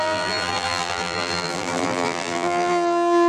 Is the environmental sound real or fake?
fake